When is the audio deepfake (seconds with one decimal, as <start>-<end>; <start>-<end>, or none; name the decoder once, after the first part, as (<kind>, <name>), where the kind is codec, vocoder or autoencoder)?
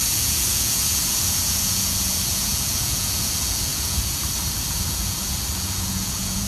0.0-4.2 (vocoder, Vocos); 4.7-6.5